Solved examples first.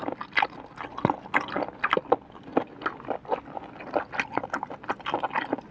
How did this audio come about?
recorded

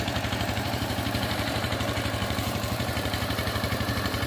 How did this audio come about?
remade